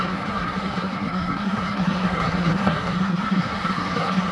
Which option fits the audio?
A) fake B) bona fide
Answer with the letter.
A